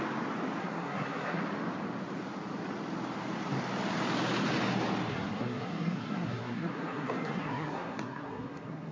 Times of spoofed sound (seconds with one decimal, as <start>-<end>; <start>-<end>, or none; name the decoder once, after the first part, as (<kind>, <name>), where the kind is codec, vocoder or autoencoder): 0.6-1.4 (codec, SNAC); 5.1-8.9